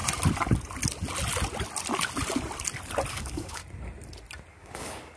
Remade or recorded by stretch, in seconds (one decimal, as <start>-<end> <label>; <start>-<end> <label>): 0.0-3.1 recorded; 3.1-3.6 remade; 3.6-4.5 recorded; 4.5-5.2 remade